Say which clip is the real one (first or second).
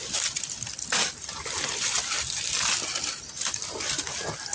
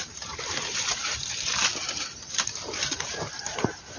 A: first